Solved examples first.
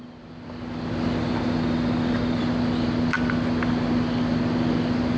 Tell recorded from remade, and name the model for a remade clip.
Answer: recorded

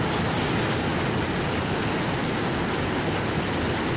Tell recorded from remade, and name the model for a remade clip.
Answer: recorded